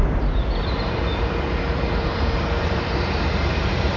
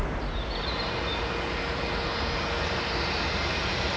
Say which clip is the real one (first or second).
second